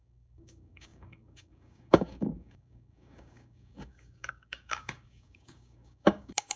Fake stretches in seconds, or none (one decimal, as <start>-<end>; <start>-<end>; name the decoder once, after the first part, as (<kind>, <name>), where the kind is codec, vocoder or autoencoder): 0.0-6.6 (codec, DAC)